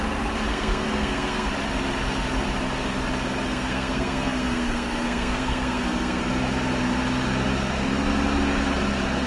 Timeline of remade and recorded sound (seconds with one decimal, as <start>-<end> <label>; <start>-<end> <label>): 0.0-0.5 recorded; 0.5-1.5 remade; 1.5-3.5 recorded; 3.5-6.2 remade; 6.2-9.3 recorded